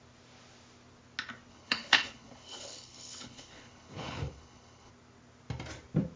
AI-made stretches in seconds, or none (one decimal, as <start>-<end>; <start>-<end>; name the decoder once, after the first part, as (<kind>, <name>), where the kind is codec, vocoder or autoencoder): 1.5-4.9 (codec, HILCodec)